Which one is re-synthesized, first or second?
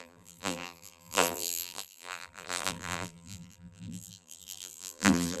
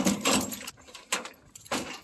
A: first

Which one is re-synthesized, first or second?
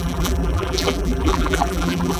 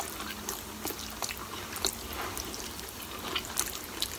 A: first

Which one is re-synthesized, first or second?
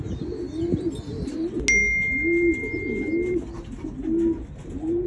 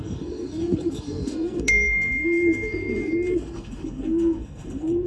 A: second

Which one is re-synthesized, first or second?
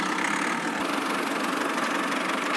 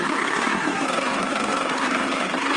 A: second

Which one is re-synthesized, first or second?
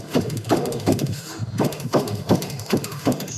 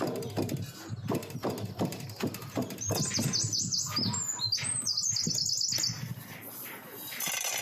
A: first